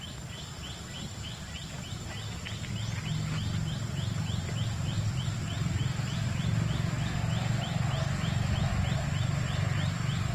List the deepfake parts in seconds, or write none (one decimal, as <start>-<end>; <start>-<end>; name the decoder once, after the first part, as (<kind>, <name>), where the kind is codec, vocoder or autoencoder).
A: 0.9-1.7 (vocoder, BigVGAN v2)